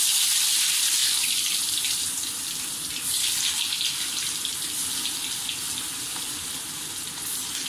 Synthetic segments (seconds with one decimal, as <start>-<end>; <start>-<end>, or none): none